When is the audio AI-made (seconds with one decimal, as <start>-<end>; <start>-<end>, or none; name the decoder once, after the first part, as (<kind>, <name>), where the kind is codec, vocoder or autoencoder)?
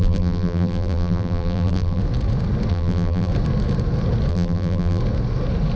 0.0-2.0 (vocoder, BigVGAN v2); 2.7-3.3; 4.3-5.0